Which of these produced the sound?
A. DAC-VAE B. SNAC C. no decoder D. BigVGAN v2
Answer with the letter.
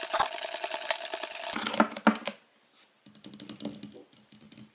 C